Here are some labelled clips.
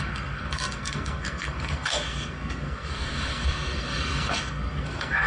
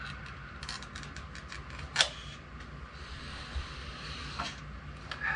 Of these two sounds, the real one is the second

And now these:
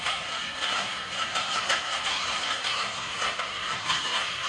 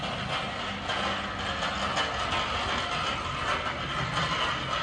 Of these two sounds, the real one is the second